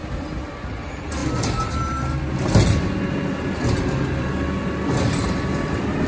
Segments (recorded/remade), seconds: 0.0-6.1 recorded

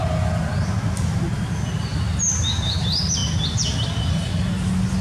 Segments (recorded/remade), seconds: 0.0-5.0 recorded

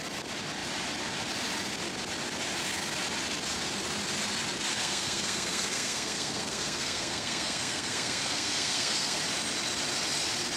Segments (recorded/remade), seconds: 0.0-4.7 recorded; 4.7-9.2 remade; 9.2-10.6 recorded

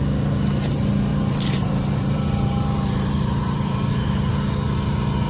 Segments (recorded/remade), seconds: 0.0-1.1 recorded; 1.1-4.3 remade; 4.3-5.3 recorded

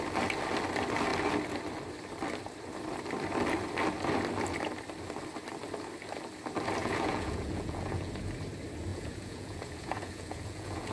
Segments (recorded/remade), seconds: 0.0-6.8 recorded; 6.8-8.1 remade; 8.1-8.9 recorded; 8.9-10.9 remade